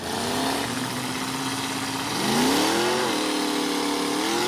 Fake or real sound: real